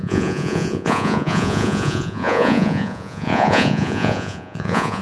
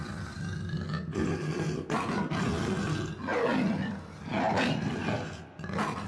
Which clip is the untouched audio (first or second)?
second